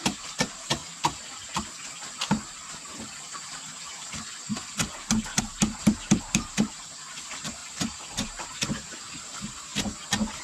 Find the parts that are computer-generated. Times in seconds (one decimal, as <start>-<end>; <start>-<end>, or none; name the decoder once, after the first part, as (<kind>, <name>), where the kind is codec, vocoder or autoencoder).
0.0-0.8 (vocoder, BigVGAN v2); 5.4-9.7